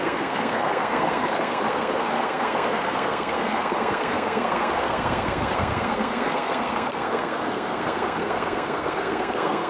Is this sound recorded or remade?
remade